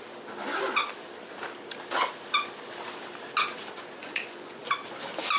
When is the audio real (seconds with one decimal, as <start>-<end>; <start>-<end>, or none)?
0.0-4.0; 4.6-5.4